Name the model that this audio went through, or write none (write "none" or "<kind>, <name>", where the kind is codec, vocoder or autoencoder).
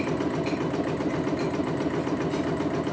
none